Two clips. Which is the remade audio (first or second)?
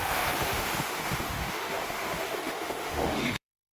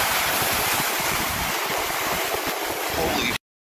first